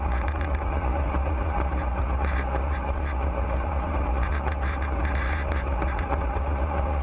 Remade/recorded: remade